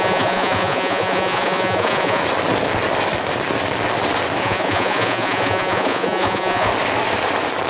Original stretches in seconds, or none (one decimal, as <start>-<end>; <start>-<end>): 2.2-4.4; 6.7-7.7